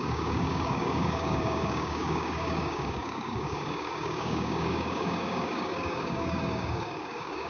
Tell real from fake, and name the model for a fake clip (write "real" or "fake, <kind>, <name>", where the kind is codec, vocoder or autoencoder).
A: fake, codec, DAC